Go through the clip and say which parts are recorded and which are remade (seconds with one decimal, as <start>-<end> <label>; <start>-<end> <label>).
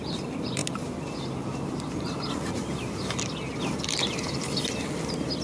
0.0-5.4 recorded